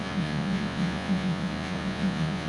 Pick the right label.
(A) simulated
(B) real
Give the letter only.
A